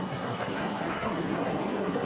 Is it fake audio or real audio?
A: fake